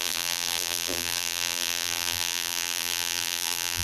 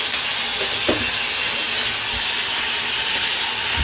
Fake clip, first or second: first